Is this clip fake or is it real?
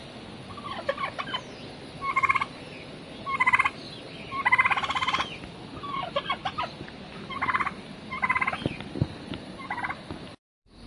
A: real